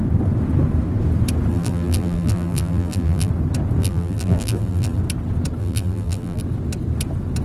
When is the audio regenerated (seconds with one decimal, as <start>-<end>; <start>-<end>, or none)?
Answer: 1.5-3.3; 3.8-5.0; 5.6-6.4